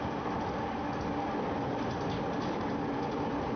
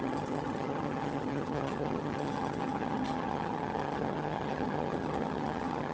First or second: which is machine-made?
second